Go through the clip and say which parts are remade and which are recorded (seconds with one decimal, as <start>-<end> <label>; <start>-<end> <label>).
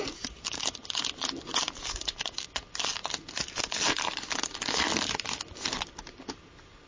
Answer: 0.0-1.5 recorded; 1.5-2.2 remade; 2.2-6.9 recorded